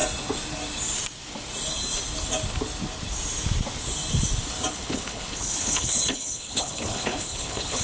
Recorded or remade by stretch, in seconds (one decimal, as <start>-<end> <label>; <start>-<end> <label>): 0.0-4.7 recorded; 4.7-7.8 remade